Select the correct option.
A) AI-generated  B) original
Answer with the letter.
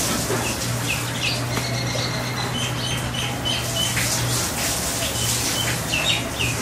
B